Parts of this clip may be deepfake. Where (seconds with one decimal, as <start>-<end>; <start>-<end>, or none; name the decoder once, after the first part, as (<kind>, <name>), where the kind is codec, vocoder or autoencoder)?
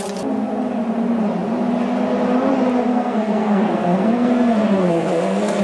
2.9-5.6 (codec, SNAC)